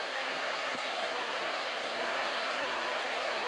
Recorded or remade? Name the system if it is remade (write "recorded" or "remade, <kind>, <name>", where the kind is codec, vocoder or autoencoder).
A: remade, codec, SNAC